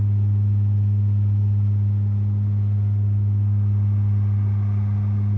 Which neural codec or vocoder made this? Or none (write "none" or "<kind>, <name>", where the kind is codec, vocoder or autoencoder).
none